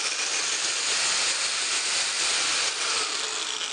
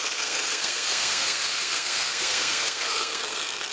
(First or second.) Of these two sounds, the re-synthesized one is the second